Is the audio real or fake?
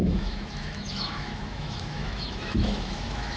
fake